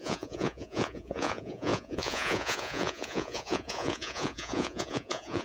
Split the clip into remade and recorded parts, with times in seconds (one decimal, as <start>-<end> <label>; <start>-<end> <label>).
0.0-5.4 remade